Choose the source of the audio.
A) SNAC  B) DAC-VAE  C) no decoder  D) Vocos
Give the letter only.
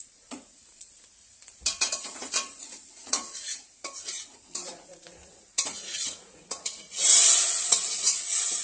D